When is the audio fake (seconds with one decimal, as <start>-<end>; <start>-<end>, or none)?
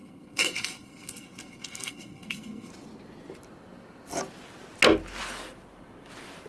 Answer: 0.0-2.7